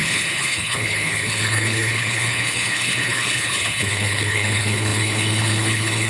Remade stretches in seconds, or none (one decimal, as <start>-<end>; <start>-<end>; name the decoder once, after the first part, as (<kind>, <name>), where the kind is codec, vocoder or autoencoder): 0.0-6.1 (codec, HILCodec)